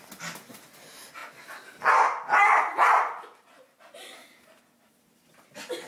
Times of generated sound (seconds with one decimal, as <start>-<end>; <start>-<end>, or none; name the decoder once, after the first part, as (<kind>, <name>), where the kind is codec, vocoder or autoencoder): none